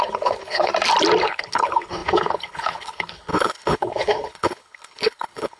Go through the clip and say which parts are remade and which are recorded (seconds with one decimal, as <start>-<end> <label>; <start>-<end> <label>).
0.0-0.7 remade; 0.7-1.2 recorded; 1.2-5.6 remade